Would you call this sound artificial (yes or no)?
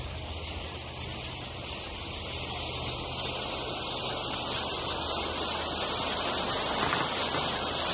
no